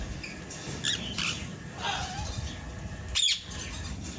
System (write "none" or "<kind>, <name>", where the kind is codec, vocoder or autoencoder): none